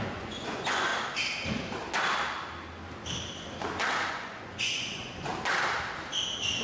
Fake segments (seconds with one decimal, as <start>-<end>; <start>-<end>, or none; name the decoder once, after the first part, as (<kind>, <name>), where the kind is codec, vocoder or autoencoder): 0.0-0.9 (vocoder, Vocos); 4.1-5.3